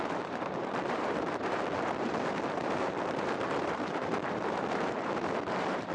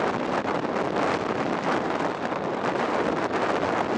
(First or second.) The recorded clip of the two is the second